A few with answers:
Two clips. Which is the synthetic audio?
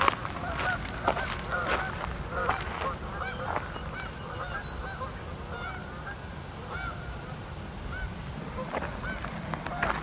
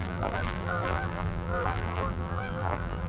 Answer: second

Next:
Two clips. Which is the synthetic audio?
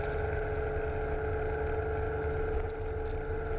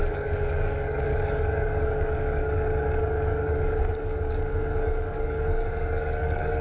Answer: second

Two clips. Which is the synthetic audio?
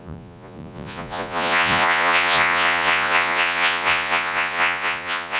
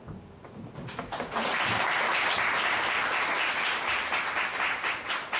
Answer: first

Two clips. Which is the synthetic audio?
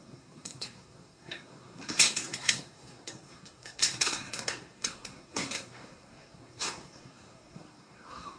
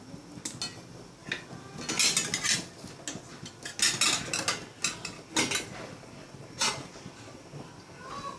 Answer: first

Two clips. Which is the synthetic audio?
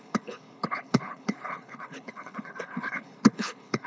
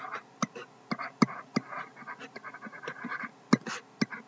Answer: first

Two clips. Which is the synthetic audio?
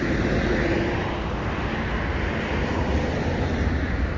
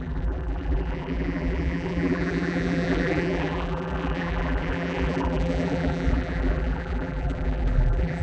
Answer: second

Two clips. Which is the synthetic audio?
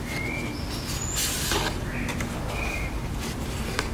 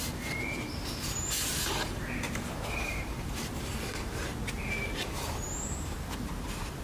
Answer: second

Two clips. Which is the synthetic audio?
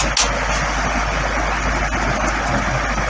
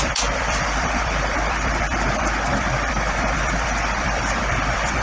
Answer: second